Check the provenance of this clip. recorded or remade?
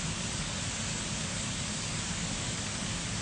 remade